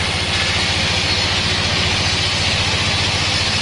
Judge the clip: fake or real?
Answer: real